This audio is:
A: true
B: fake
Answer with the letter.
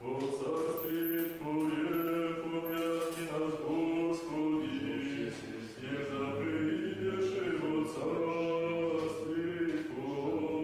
B